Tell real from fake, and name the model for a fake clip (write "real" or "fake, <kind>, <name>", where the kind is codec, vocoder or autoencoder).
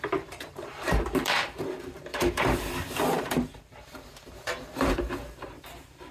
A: fake, vocoder, BigVGAN v2